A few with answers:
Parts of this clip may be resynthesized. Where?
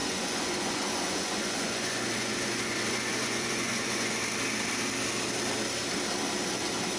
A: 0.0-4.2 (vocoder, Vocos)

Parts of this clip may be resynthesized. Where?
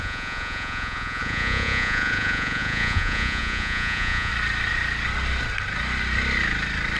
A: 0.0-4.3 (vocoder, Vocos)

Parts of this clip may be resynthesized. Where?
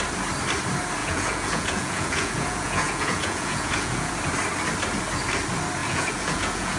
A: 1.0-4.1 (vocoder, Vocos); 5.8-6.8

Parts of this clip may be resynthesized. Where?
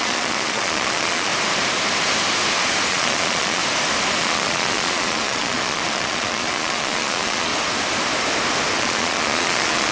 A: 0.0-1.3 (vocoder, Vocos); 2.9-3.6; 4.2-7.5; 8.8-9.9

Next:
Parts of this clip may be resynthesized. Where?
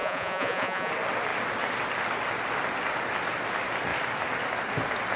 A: 0.0-0.9 (vocoder, Vocos)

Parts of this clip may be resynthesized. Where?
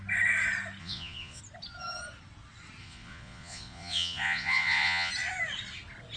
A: 0.8-1.4 (vocoder, Vocos); 2.8-5.1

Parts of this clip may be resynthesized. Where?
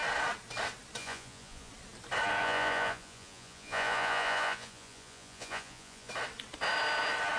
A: 1.0-1.7 (vocoder, Vocos); 2.4-6.1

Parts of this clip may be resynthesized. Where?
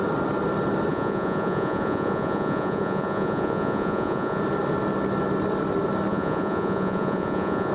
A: 0.9-4.4 (vocoder, Vocos); 6.1-7.7